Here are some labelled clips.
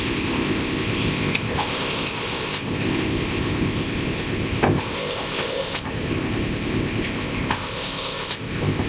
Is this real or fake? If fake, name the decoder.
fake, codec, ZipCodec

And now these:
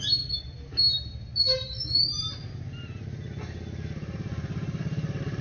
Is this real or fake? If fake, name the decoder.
real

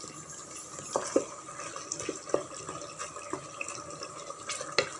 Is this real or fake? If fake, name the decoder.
real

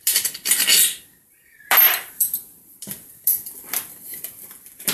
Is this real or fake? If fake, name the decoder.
real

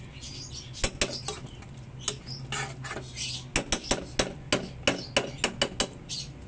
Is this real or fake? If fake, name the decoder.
real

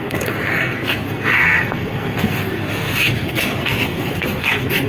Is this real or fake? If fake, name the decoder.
fake, codec, SNAC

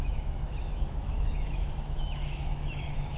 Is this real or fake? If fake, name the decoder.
fake, autoencoder, DAC-VAE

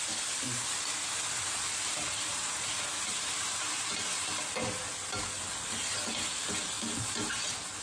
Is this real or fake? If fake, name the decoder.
real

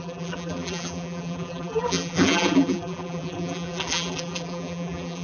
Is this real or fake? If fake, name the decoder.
fake, vocoder, BigVGAN v2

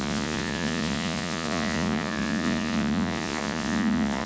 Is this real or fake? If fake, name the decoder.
fake, vocoder, Vocos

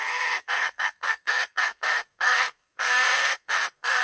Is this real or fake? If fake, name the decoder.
fake, codec, SNAC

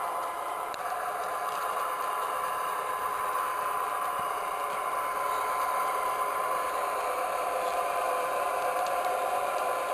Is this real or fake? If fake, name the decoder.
fake, vocoder, BigVGAN v2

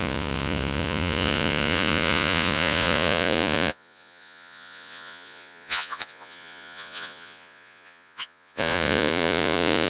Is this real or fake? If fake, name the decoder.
fake, vocoder, Vocos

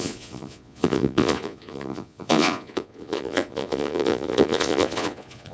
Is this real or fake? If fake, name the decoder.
fake, vocoder, Vocos